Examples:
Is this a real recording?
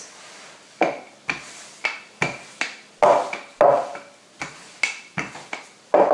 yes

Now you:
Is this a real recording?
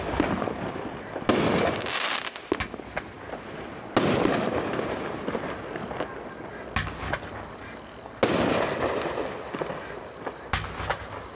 yes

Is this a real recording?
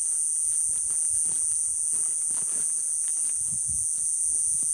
yes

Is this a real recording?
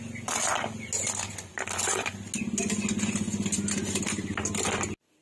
yes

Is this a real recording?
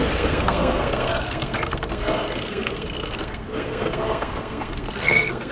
no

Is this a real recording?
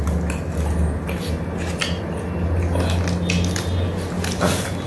yes